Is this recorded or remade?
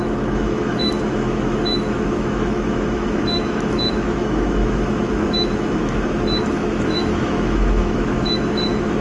remade